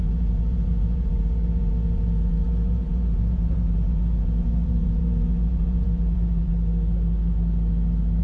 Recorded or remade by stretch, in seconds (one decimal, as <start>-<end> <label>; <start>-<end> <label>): 0.0-6.5 remade; 6.5-8.2 recorded